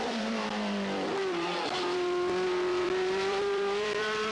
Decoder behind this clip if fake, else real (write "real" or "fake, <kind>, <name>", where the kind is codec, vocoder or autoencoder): fake, vocoder, BigVGAN v2